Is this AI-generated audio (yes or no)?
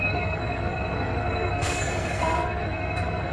yes